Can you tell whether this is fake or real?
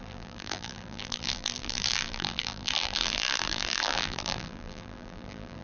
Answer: fake